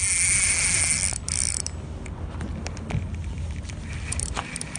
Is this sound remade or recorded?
recorded